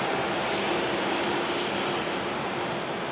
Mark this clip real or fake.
real